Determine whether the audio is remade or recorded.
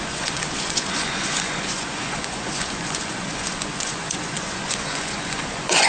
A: remade